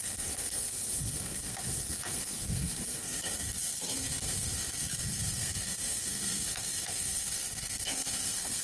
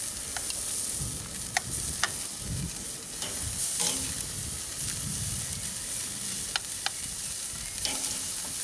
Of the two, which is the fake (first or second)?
first